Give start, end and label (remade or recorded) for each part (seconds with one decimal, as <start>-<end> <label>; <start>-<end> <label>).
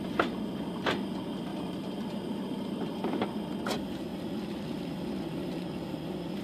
0.0-1.5 recorded; 1.5-2.9 remade; 2.9-6.4 recorded